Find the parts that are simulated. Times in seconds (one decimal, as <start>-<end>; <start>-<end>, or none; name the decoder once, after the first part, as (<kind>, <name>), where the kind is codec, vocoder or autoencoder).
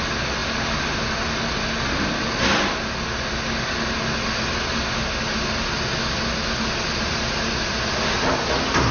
none